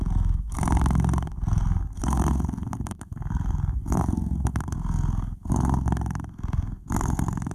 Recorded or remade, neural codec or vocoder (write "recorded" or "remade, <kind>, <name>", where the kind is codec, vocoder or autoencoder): remade, codec, SNAC